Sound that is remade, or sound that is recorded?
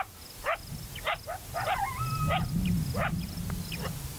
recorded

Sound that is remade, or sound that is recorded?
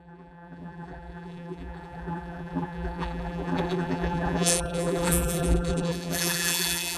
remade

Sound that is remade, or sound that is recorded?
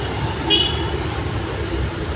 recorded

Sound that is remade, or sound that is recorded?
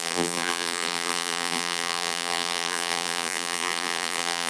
remade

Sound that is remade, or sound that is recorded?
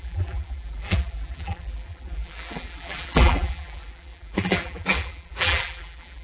remade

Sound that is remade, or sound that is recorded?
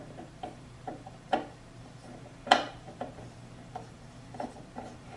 remade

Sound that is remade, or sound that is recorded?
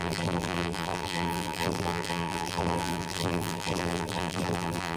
remade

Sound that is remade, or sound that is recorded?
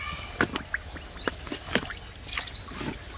recorded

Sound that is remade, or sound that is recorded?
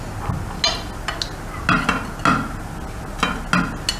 recorded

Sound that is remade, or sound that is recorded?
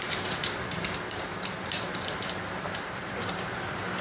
remade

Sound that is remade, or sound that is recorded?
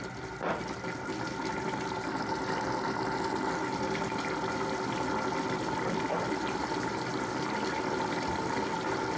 recorded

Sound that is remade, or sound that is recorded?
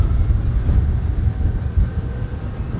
recorded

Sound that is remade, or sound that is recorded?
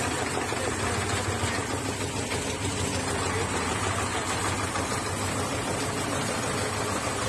recorded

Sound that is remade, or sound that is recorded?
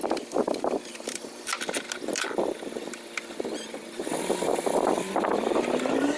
remade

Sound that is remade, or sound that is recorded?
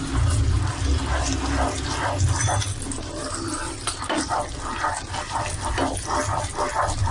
recorded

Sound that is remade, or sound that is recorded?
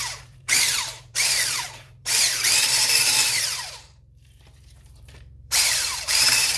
remade